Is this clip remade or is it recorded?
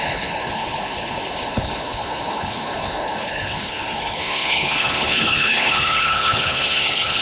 remade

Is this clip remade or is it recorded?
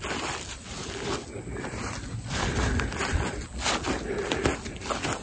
recorded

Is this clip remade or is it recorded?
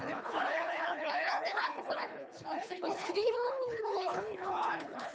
remade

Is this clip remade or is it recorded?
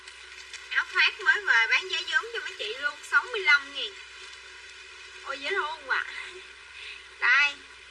recorded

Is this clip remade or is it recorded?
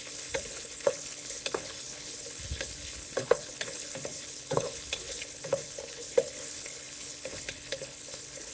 remade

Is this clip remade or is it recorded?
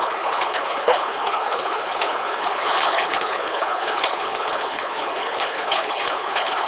remade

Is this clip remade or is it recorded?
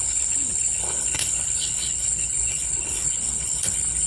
remade